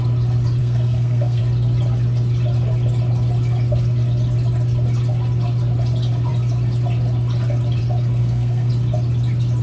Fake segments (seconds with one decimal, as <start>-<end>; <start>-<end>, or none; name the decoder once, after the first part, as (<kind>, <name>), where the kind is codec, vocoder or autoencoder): 0.6-1.4 (codec, SNAC); 8.2-8.7